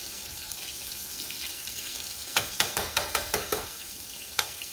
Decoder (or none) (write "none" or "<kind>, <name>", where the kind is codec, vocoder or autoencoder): codec, SNAC